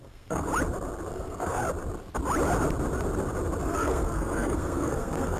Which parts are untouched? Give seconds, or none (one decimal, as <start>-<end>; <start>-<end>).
0.5-1.1; 1.6-3.6